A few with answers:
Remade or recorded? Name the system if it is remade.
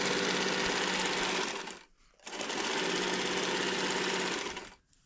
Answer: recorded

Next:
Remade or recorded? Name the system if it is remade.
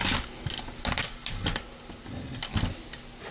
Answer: recorded